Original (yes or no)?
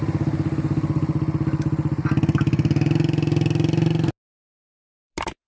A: yes